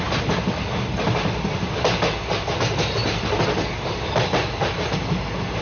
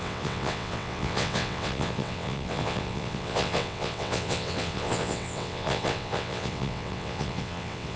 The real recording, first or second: first